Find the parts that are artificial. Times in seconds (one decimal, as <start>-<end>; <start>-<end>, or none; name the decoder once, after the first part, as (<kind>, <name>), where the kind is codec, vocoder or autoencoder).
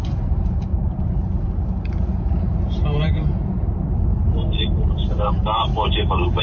0.0-5.7 (vocoder, BigVGAN v2)